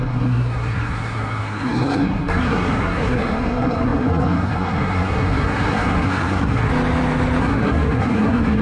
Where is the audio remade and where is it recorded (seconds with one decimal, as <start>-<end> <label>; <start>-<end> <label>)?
0.0-6.7 remade; 6.7-7.4 recorded; 7.4-8.6 remade